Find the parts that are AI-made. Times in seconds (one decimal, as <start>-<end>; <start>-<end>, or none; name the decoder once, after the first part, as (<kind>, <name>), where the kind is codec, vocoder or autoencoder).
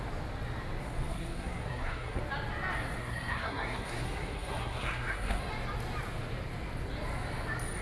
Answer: 1.1-2.2 (codec, SNAC); 3.0-5.4